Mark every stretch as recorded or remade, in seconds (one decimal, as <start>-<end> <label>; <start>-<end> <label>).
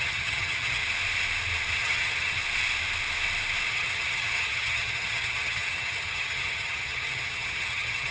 0.0-0.8 remade; 0.8-1.8 recorded; 1.8-2.4 remade; 2.4-3.7 recorded; 3.7-8.1 remade